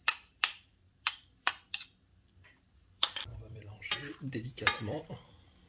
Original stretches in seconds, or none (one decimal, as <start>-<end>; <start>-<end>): none

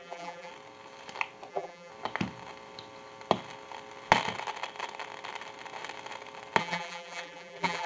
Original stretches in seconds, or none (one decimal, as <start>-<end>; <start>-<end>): 0.5-1.5; 1.9-6.6

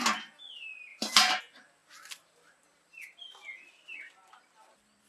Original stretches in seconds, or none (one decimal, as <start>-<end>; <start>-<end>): 0.0-0.9; 1.4-5.1

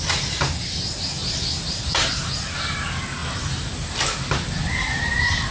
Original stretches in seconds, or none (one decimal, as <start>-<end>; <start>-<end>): 0.0-1.2; 2.0-5.5

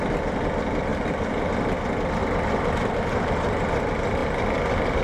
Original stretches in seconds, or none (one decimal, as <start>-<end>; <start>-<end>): 0.0-0.9; 1.5-2.2; 3.8-5.0

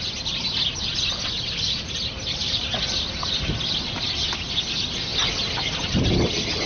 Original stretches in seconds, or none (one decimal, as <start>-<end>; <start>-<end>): 0.0-6.7

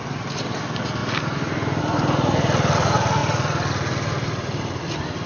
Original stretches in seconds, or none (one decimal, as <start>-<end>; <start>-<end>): 0.0-1.0; 1.8-5.3

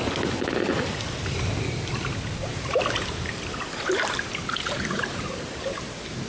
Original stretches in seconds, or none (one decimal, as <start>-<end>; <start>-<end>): 0.0-2.5; 5.8-6.3